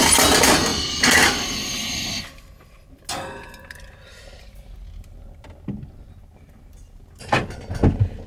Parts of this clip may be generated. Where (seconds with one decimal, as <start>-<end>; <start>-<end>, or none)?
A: none